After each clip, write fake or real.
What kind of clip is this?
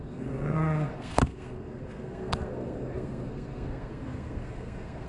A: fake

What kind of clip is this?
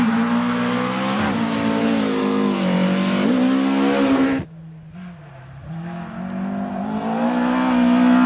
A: real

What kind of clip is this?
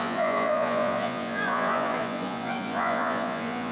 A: fake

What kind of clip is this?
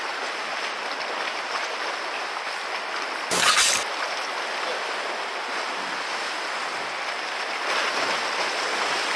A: real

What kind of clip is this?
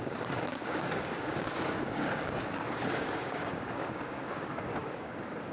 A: fake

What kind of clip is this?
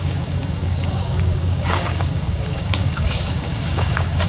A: fake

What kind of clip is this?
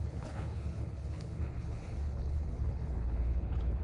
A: fake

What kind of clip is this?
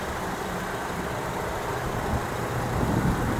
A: fake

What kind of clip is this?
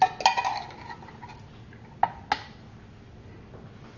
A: real